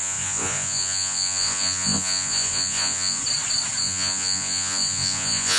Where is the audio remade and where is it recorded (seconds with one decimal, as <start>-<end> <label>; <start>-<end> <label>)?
0.0-3.2 remade; 3.2-3.8 recorded; 3.8-5.6 remade

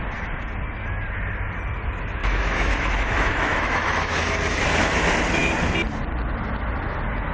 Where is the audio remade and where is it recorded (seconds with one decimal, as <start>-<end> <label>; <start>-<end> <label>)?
0.0-2.2 recorded; 2.2-4.1 remade; 4.1-7.3 recorded

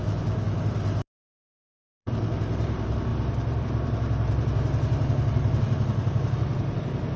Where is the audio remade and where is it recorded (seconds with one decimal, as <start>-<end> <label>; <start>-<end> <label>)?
0.0-0.6 recorded; 0.6-7.2 remade